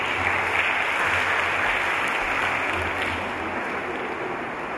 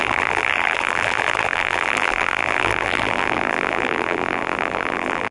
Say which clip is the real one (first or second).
first